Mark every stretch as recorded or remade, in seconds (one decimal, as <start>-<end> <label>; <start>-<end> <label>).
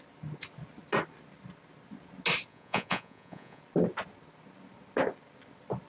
0.0-2.5 recorded; 2.5-3.6 remade; 3.6-5.9 recorded